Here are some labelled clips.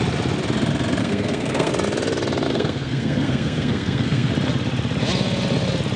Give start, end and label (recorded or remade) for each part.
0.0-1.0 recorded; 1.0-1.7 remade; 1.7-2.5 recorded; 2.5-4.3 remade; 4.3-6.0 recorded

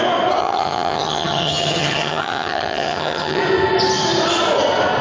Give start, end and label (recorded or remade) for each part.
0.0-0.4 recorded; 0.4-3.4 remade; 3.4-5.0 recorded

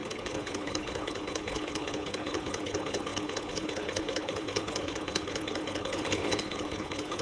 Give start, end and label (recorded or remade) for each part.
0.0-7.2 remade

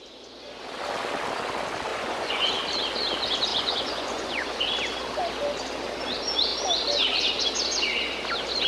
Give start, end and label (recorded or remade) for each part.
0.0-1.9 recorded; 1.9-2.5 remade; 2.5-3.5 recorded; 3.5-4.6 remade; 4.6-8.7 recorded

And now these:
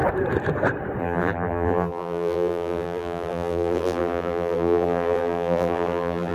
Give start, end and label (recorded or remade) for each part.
0.0-1.0 recorded; 1.0-6.3 remade

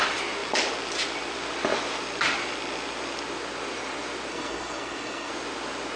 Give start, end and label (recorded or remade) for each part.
0.0-4.3 recorded; 4.3-5.3 remade; 5.3-6.0 recorded